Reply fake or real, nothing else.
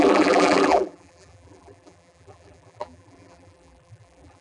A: fake